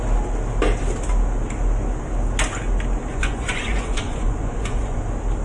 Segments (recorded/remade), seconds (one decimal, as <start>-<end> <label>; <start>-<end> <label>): 0.0-3.1 recorded; 3.1-5.0 remade; 5.0-5.4 recorded